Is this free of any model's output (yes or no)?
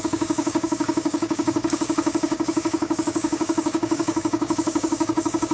no